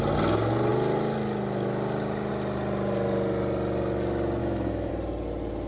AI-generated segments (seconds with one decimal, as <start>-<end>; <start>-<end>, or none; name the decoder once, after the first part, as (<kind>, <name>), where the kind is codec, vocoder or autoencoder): 4.4-4.9 (autoencoder, DAC-VAE)